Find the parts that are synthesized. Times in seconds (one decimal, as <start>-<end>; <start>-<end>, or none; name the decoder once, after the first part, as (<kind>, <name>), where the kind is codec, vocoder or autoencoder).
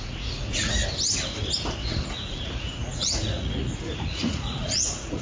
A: 0.0-0.8 (vocoder, Vocos); 1.7-5.2